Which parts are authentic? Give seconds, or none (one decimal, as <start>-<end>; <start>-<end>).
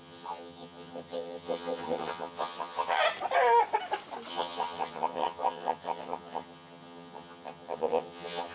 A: 3.0-4.3